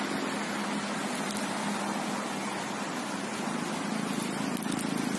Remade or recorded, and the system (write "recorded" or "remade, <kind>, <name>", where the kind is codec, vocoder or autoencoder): recorded